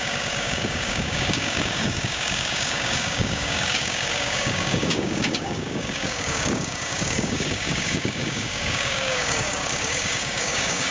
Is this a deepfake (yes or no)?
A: yes